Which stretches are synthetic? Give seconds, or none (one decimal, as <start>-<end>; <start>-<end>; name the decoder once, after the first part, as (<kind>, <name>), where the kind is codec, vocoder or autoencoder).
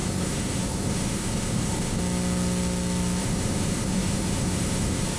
0.0-2.0 (codec, SNAC); 3.2-5.2